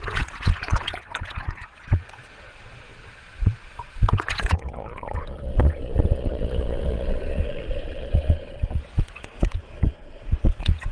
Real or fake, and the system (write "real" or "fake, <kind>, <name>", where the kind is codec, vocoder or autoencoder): fake, vocoder, Vocos